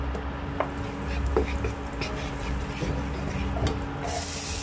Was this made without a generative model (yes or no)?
yes